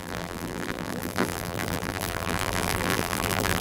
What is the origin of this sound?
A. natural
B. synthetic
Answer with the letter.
B